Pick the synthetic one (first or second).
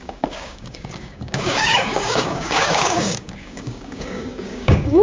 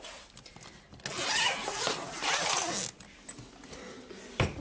first